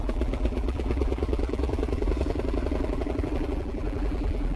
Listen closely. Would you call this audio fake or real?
fake